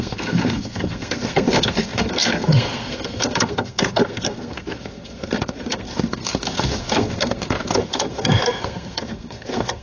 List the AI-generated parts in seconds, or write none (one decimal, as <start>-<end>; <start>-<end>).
0.0-9.8